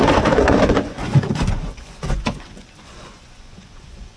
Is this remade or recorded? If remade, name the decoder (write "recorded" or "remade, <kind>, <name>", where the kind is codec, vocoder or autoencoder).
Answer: remade, vocoder, Vocos